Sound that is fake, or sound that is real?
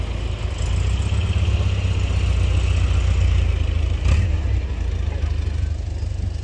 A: real